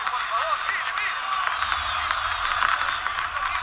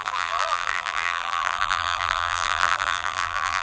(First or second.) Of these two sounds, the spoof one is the second